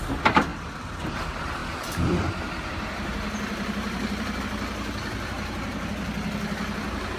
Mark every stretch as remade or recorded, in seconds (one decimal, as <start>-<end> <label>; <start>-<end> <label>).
0.0-1.6 recorded; 1.6-4.4 remade; 4.4-5.0 recorded; 5.0-5.9 remade; 5.9-7.2 recorded